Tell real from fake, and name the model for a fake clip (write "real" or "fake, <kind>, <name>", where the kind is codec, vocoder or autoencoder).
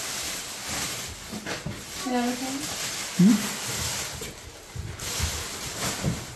real